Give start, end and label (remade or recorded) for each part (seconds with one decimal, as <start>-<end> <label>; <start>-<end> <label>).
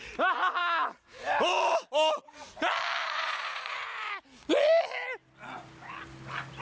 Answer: 0.0-3.0 recorded; 3.0-4.1 remade; 4.1-6.6 recorded